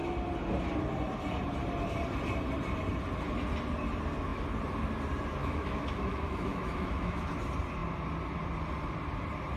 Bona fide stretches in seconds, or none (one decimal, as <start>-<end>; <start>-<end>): 0.0-5.4; 7.3-9.6